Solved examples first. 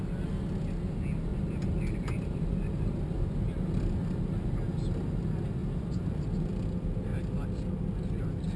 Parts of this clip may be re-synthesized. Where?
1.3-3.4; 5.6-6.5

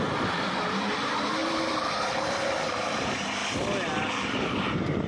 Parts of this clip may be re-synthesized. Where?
0.0-3.4; 4.2-5.1

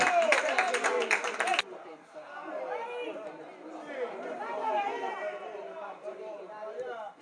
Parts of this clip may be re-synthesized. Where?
0.0-1.5; 3.9-7.2